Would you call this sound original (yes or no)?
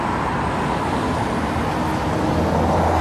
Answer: yes